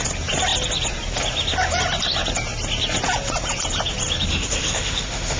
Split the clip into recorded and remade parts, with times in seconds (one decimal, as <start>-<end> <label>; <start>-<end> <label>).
0.0-4.3 recorded; 4.3-5.4 remade